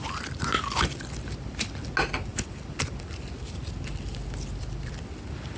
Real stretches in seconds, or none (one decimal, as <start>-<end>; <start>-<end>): 0.0-5.6